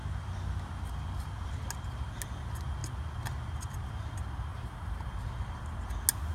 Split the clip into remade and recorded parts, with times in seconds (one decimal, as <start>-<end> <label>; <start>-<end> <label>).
0.0-4.5 recorded; 4.5-5.1 remade; 5.1-6.3 recorded